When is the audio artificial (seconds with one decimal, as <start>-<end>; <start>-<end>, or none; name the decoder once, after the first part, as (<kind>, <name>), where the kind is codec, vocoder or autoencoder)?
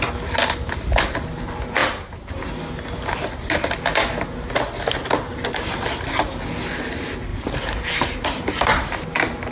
1.8-2.3 (vocoder, BigVGAN v2); 7.3-9.0